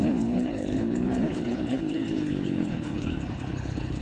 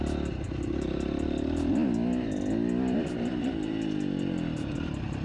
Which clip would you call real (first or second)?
second